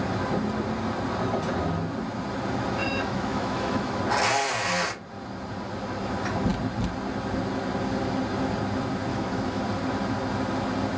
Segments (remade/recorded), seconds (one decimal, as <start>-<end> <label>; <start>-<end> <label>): 0.0-2.8 recorded; 2.8-4.0 remade; 4.0-9.1 recorded; 9.1-9.6 remade; 9.6-11.0 recorded